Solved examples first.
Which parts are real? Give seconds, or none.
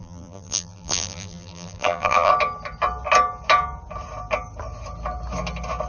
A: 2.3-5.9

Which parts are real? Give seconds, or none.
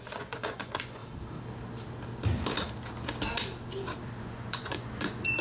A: 1.0-4.2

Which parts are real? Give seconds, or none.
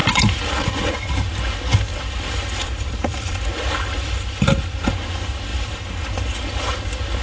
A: 1.1-1.9; 5.0-5.5; 6.1-7.2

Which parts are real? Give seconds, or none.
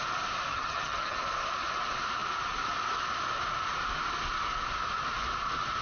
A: 0.0-0.5; 1.2-5.8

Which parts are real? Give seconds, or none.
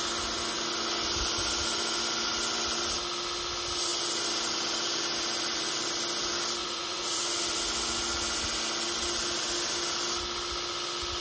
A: 0.0-6.6; 7.3-11.2